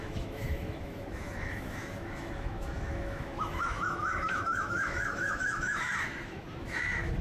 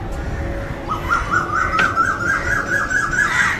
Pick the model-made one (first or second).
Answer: first